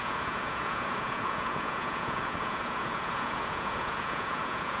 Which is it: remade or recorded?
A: remade